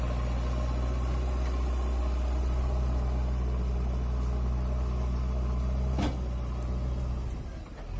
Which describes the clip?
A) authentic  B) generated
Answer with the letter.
A